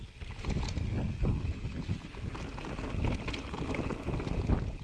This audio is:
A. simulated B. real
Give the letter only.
B